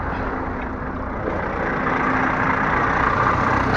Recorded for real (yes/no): yes